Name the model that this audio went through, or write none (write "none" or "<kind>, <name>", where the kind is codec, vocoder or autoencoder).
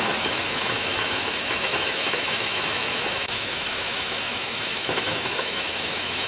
autoencoder, DAC-VAE